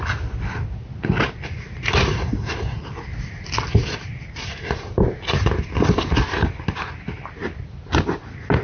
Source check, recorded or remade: recorded